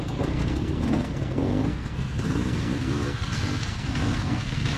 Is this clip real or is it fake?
fake